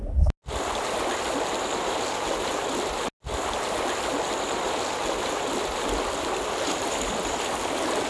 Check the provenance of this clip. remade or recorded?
recorded